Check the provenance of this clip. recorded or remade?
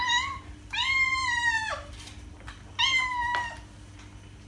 recorded